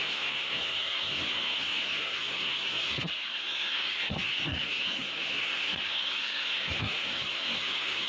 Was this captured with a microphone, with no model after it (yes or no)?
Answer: no